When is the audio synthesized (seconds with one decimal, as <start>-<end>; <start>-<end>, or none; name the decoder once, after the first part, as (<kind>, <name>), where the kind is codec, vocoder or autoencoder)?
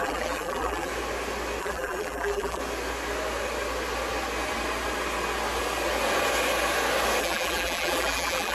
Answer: 0.0-0.9 (vocoder, BigVGAN v2); 1.6-2.6; 7.2-8.5